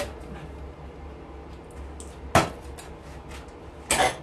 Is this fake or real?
real